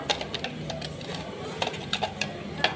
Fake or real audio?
real